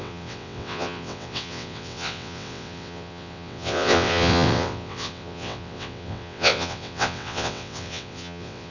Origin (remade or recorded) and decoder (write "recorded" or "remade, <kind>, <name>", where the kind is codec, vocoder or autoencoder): remade, vocoder, WaveNeXt